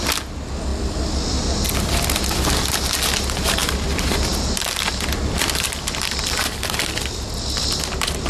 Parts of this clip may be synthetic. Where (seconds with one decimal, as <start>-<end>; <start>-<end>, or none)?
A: 0.7-2.5; 3.6-6.5